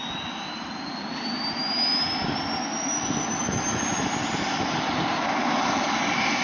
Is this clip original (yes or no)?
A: yes